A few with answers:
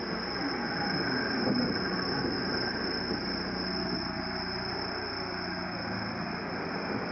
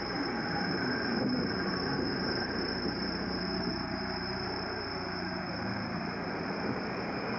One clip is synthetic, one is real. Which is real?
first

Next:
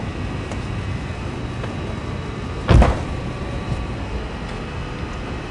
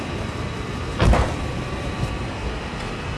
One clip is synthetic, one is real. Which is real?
first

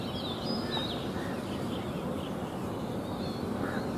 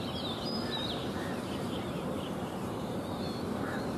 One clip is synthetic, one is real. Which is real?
first